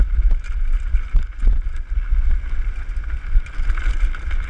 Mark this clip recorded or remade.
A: recorded